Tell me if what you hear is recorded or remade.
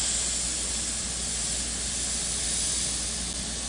recorded